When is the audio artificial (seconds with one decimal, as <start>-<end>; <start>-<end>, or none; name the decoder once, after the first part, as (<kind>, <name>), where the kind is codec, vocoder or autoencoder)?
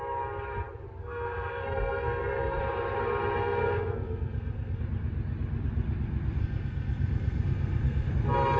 1.0-2.6 (codec, SNAC); 3.4-4.8; 6.4-8.1